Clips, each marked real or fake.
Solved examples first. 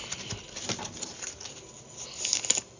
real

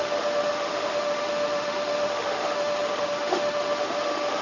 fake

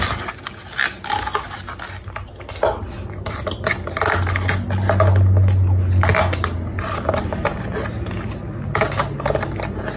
real